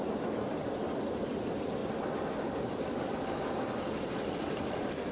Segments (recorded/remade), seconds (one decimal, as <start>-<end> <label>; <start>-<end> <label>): 0.0-5.1 recorded